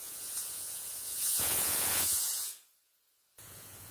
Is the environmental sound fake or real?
fake